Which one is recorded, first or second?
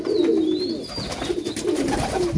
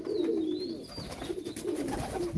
first